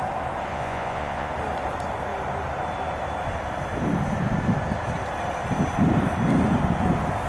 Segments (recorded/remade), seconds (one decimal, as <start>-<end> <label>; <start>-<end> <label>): 0.0-0.5 recorded; 0.5-1.3 remade; 1.3-7.3 recorded